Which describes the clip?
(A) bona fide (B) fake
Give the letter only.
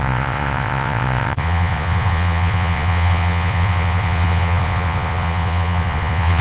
B